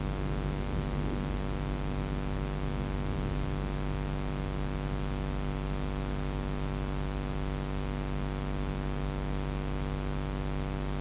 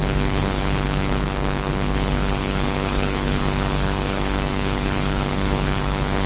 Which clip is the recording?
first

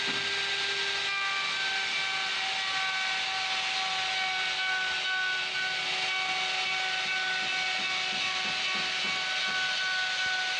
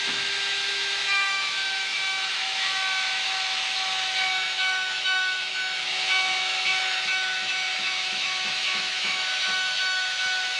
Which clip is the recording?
first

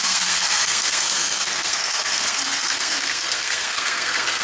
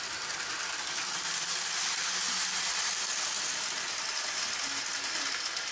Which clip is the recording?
second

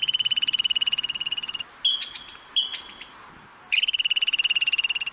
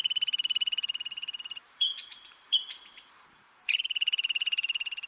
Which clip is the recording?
first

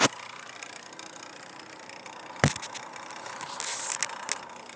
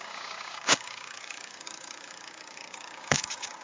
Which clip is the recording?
first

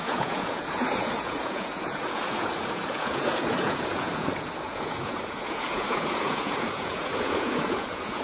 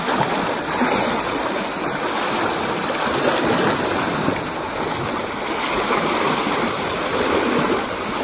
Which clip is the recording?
second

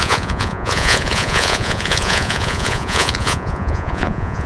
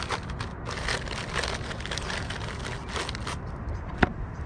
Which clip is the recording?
second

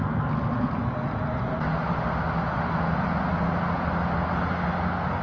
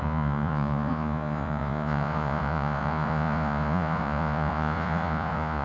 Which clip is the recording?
first